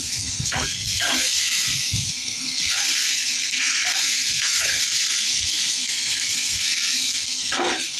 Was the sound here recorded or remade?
remade